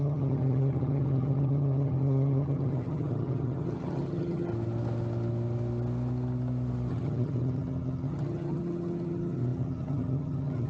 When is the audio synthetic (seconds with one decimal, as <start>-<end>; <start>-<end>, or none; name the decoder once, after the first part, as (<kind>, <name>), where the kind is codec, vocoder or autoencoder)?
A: 0.0-4.5 (vocoder, HiFi-GAN); 6.9-10.7